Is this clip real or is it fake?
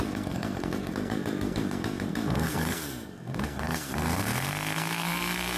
fake